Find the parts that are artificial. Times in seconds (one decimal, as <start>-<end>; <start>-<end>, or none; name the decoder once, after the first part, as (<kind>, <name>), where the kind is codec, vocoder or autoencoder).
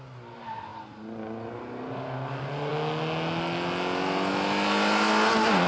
none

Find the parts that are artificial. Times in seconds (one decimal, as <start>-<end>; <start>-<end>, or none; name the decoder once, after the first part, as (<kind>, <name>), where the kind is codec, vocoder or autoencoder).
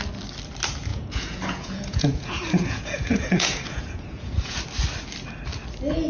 0.9-4.6 (vocoder, Vocos)